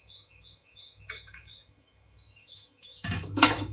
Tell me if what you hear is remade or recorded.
remade